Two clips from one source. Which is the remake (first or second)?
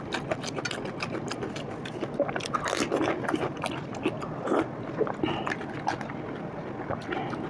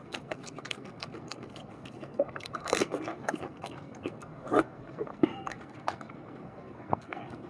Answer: second